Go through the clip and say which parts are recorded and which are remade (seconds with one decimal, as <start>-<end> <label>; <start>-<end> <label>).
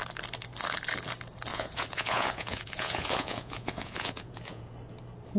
0.0-1.5 recorded; 1.5-4.6 remade; 4.6-5.4 recorded